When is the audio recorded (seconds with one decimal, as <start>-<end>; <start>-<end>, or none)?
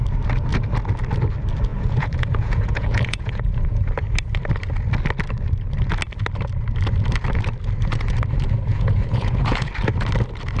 0.0-1.7; 3.8-8.7; 9.7-10.6